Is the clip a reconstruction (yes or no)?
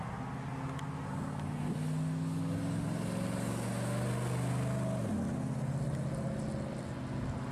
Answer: no